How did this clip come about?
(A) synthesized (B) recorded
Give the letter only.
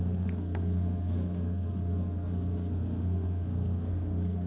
A